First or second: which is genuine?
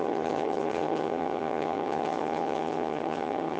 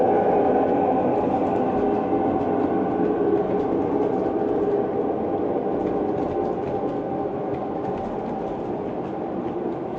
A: second